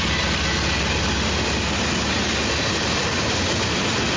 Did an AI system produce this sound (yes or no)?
no